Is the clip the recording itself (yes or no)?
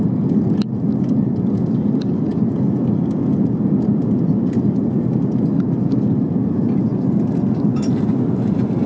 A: yes